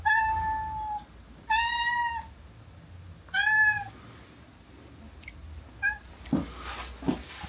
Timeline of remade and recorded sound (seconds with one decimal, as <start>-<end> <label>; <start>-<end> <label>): 0.0-7.5 recorded

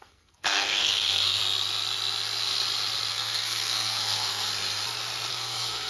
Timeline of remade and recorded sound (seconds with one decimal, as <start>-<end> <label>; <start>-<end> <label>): 0.0-1.4 remade; 1.4-3.1 recorded; 3.1-4.5 remade; 4.5-5.3 recorded; 5.3-5.9 remade

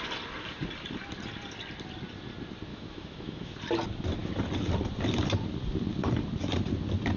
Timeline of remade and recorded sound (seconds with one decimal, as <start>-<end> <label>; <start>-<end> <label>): 0.0-2.7 recorded; 2.7-3.5 remade; 3.5-7.2 recorded

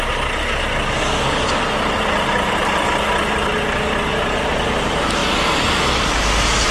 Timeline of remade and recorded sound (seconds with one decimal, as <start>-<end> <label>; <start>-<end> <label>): 0.0-6.7 recorded

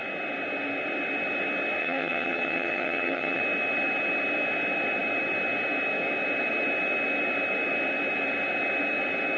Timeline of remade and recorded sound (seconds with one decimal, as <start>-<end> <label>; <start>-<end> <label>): 0.0-1.8 recorded; 1.8-3.4 remade; 3.4-9.4 recorded

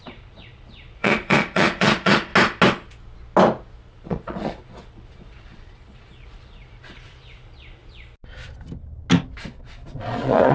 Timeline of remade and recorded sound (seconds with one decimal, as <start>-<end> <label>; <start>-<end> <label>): 0.0-2.3 remade; 2.3-3.9 recorded; 3.9-7.8 remade; 7.8-9.4 recorded; 9.4-10.5 remade

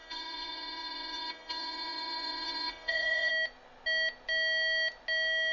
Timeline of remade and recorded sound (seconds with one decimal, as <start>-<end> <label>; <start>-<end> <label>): 0.0-3.3 remade; 3.3-5.5 recorded